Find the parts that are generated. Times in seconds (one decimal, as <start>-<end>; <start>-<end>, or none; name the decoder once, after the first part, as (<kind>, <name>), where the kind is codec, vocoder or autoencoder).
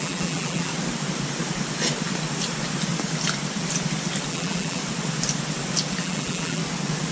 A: 0.0-0.7 (vocoder, BigVGAN v2); 4.3-4.8; 6.0-6.6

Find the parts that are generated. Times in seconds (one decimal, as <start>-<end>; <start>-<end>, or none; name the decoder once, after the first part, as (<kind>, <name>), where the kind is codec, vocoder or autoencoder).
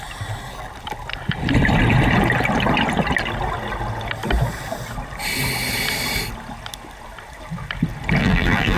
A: 8.2-8.8 (vocoder, BigVGAN v2)